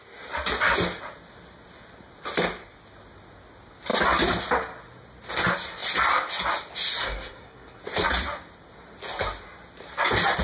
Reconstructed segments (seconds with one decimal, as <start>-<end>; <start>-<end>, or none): 7.0-7.8